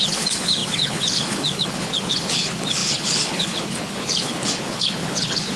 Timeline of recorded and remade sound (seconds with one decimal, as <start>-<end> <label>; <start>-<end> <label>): 0.0-5.6 remade